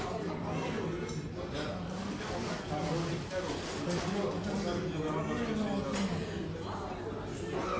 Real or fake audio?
real